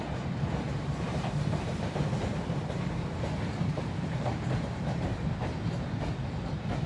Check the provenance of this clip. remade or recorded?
remade